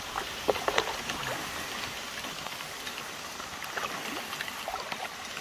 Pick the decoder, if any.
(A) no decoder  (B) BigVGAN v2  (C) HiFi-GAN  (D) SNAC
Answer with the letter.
A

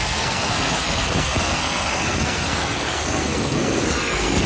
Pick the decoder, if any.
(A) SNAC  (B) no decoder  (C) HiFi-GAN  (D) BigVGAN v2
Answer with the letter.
A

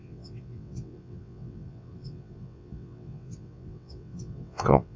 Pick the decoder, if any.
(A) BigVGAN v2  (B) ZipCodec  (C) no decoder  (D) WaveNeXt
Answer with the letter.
D